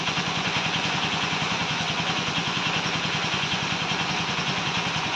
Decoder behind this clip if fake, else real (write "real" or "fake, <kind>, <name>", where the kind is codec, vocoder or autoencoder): fake, vocoder, Vocos